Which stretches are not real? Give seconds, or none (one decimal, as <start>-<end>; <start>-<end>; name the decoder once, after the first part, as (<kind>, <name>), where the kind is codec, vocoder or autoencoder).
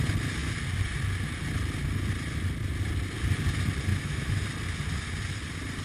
3.9-4.4 (autoencoder, DAC-VAE)